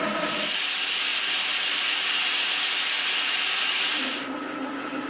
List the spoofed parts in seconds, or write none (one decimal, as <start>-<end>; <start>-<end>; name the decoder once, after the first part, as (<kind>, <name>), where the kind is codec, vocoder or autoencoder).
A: none